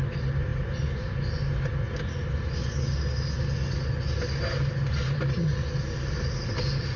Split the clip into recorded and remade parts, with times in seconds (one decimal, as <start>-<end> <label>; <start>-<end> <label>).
0.0-7.0 recorded